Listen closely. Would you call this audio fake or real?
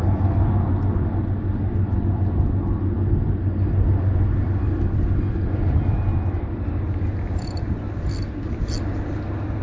real